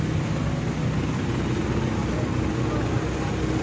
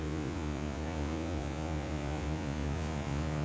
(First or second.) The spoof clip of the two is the second